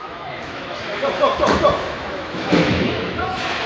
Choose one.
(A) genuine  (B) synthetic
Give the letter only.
B